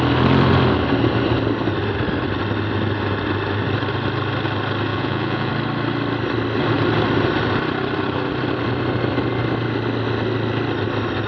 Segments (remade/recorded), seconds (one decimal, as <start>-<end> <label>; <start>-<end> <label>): 0.0-4.9 recorded; 4.9-5.5 remade; 5.5-11.3 recorded